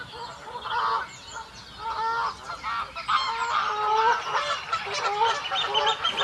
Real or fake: real